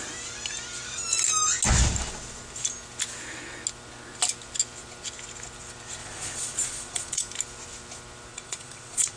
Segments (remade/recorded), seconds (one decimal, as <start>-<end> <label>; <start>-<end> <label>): 0.0-6.0 recorded; 6.0-7.2 remade; 7.2-8.3 recorded; 8.3-9.2 remade